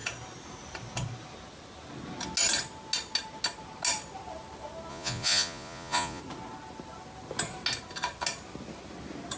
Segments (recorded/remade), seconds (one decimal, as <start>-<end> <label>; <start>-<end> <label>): 0.0-4.9 recorded; 4.9-6.2 remade; 6.2-9.4 recorded